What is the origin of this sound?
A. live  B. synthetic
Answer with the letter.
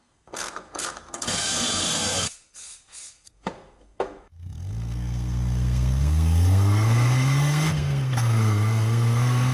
B